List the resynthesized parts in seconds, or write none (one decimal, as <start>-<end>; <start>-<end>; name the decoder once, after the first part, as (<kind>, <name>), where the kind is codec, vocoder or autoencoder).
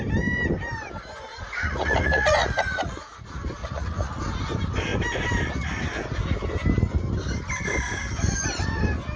1.3-3.2 (vocoder, Vocos); 3.6-4.2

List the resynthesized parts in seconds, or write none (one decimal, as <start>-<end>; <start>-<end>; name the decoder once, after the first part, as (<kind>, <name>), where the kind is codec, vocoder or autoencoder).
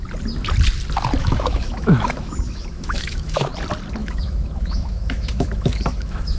1.2-3.5 (autoencoder, DAC-VAE); 4.0-6.4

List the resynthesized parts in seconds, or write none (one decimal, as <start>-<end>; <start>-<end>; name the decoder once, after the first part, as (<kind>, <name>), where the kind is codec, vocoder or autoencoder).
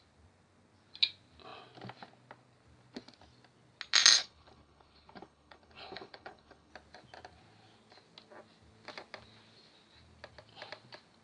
4.2-6.7 (codec, HILCodec)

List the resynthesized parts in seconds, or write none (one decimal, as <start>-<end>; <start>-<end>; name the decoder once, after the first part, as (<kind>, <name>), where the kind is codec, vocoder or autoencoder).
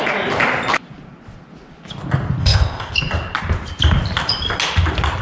2.4-2.9 (codec, ZipCodec)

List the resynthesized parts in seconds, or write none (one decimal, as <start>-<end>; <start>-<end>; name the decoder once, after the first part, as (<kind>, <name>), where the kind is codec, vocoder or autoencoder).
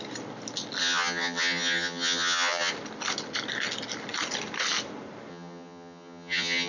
0.8-2.7 (vocoder, HiFi-GAN); 5.3-6.7